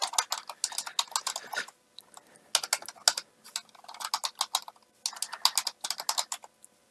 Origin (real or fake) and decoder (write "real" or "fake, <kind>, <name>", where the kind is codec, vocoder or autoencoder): real